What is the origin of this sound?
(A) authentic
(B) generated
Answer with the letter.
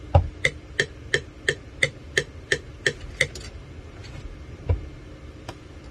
A